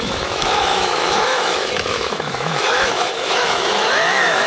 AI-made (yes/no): yes